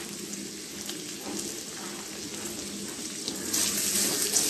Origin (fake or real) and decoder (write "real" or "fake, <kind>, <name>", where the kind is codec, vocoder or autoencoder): real